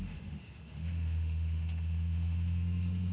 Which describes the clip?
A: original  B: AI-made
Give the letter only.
B